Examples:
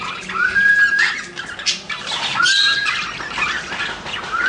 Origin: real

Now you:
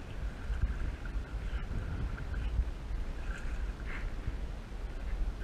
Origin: real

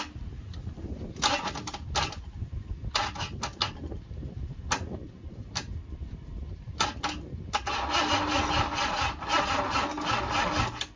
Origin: real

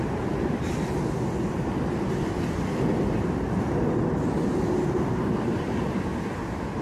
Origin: real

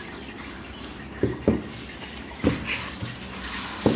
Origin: real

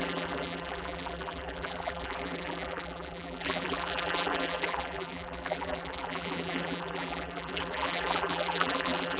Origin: fake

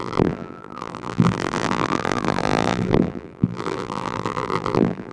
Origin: fake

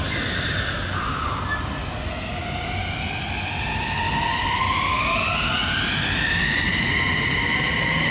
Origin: real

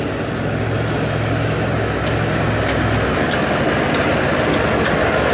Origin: real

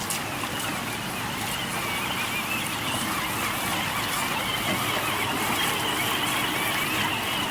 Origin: real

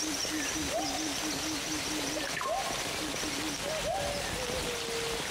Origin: real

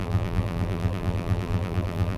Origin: fake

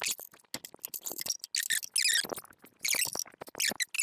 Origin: real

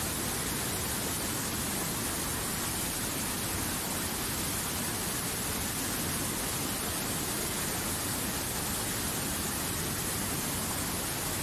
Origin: real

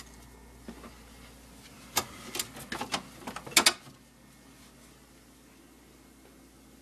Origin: real